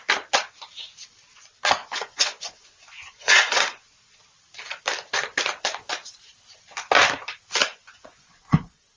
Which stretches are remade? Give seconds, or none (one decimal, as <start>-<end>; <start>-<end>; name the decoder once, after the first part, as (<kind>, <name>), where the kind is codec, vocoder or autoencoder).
1.8-4.2 (vocoder, Vocos); 7.6-9.0